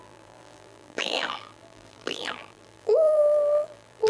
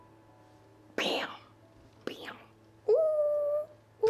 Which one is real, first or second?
second